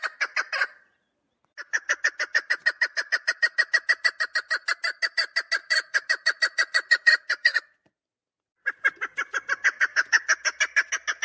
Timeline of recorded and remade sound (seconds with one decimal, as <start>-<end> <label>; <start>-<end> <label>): 0.0-5.6 recorded; 5.6-7.9 remade; 7.9-11.2 recorded

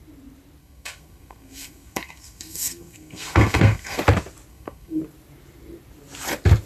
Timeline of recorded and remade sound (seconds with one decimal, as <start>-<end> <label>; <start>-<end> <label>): 0.0-0.6 recorded; 0.6-4.0 remade; 4.0-4.5 recorded; 4.5-5.0 remade; 5.0-6.7 recorded

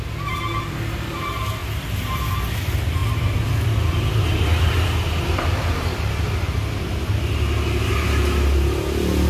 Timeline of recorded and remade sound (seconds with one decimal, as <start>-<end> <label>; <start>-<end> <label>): 0.0-3.0 recorded; 3.0-6.9 remade; 6.9-9.3 recorded

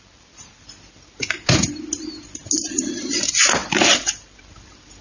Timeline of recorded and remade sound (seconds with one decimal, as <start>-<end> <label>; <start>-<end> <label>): 0.0-5.0 recorded

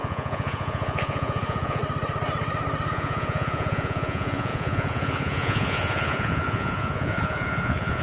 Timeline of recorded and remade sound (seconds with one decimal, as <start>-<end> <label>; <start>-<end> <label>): 0.0-1.8 remade; 1.8-2.9 recorded; 2.9-8.0 remade

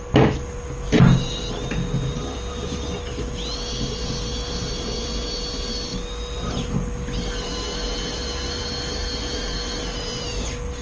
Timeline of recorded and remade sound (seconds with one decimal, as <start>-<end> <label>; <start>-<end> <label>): 0.0-10.8 recorded